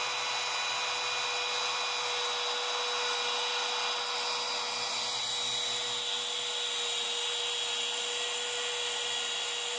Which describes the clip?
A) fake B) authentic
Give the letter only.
B